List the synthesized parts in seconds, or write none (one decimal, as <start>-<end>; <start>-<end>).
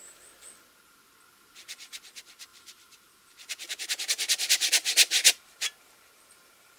2.5-6.8